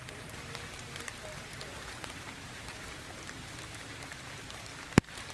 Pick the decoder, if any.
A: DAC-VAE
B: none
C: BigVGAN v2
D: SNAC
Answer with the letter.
C